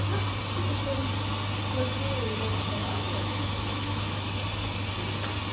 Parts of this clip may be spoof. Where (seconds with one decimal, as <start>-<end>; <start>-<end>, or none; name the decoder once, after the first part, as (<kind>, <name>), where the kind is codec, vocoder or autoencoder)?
2.8-4.1 (autoencoder, DAC-VAE)